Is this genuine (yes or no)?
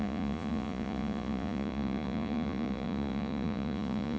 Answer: no